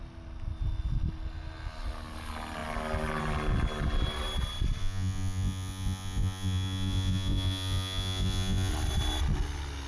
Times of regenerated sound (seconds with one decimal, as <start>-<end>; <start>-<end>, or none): 4.8-8.7